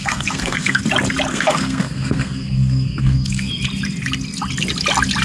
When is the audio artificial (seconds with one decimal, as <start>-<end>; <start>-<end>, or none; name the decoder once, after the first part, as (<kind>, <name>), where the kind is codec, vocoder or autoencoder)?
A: 0.0-0.8 (codec, SNAC); 1.3-3.5

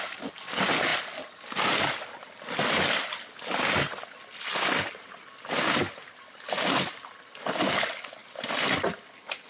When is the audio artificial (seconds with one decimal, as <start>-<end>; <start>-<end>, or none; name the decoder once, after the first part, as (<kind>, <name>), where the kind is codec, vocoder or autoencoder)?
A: none

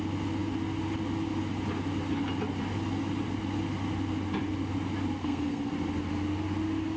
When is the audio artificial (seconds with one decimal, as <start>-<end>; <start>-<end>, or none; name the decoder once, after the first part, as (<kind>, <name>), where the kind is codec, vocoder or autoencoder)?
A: 5.2-5.7 (codec, SNAC)